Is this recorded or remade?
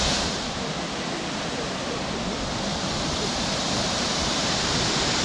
remade